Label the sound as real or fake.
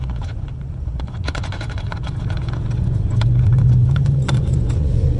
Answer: fake